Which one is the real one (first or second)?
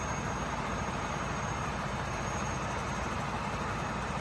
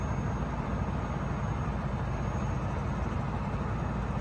second